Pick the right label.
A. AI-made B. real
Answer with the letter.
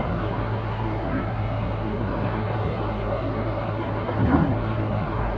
A